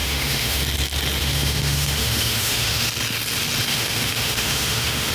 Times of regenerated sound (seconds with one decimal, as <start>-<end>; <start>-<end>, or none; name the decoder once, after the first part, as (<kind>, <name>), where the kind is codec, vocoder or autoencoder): 0.0-0.6 (autoencoder, DAC-VAE); 1.2-2.9; 3.7-5.1